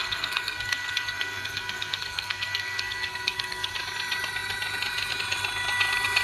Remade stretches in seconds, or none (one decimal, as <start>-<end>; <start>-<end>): 0.0-3.7